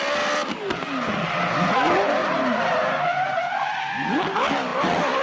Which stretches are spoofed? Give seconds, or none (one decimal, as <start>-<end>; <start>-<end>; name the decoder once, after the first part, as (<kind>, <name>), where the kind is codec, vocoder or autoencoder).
2.2-3.6 (vocoder, BigVGAN v2)